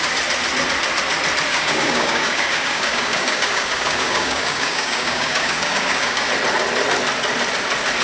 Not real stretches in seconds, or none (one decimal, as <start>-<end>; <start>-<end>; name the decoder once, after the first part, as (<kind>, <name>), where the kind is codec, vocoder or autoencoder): 1.5-6.3 (codec, DAC)